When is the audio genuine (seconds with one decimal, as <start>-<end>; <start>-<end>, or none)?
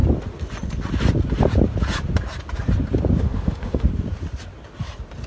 0.0-3.2; 3.9-5.3